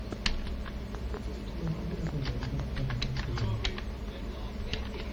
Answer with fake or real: real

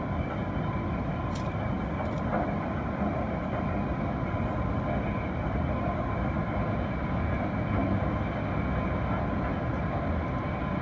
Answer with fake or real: real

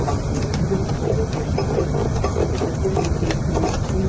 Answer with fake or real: real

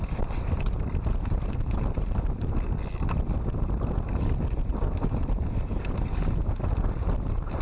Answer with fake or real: real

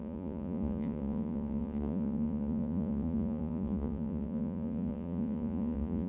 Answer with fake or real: fake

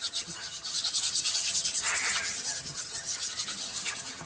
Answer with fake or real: fake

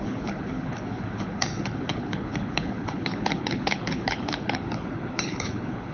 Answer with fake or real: fake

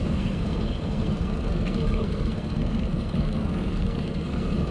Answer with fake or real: fake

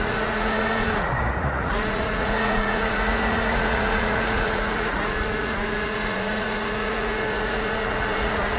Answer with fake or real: fake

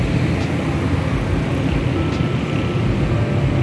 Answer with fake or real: real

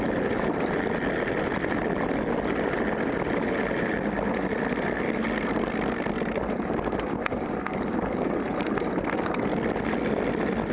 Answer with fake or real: real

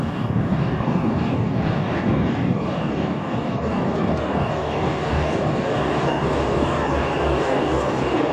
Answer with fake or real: fake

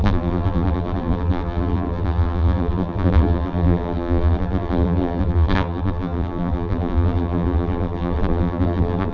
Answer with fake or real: fake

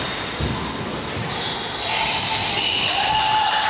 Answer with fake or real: real